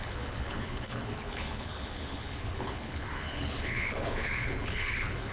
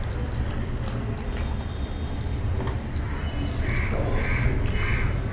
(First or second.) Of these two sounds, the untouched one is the second